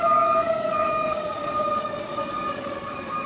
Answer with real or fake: fake